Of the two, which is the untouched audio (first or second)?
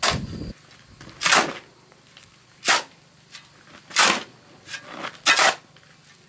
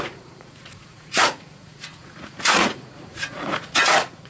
first